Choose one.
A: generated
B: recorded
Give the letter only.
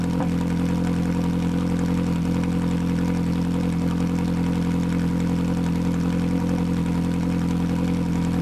B